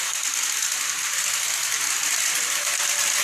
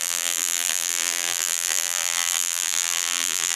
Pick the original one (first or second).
first